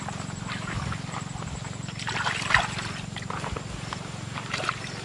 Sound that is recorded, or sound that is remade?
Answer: recorded